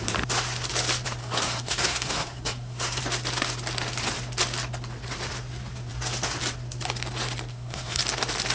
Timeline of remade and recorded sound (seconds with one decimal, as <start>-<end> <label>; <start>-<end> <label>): 0.0-1.2 recorded; 1.2-3.0 remade; 3.0-7.5 recorded; 7.5-8.0 remade; 8.0-8.5 recorded